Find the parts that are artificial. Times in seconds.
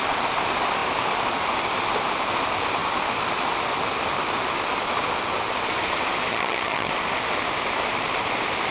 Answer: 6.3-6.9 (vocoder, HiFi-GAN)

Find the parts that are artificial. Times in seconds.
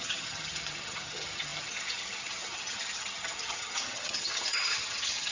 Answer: 0.0-5.3 (vocoder, HiFi-GAN)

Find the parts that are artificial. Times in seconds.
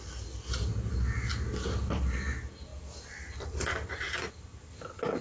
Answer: none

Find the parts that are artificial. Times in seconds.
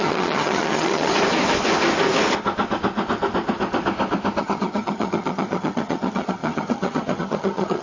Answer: 0.0-1.1 (vocoder, HiFi-GAN); 4.4-7.8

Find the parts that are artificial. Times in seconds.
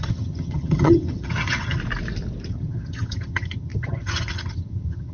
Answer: 0.0-1.8 (vocoder, HiFi-GAN); 2.5-5.1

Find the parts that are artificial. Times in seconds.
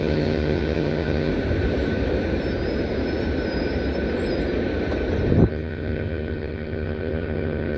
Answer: 0.0-1.3 (vocoder, HiFi-GAN); 5.5-7.8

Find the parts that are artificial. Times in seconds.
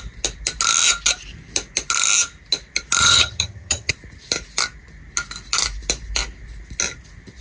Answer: 3.0-3.9 (vocoder, HiFi-GAN)